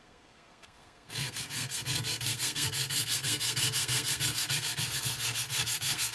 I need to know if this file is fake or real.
fake